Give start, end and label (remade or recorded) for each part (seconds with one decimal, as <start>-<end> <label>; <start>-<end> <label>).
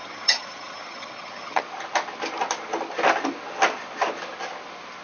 0.0-1.6 remade; 1.6-5.0 recorded